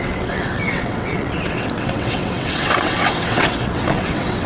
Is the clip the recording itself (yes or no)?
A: no